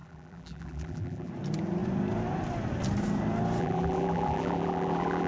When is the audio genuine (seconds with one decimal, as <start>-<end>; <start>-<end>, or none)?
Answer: 1.3-3.6